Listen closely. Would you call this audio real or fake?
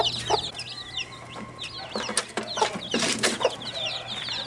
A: real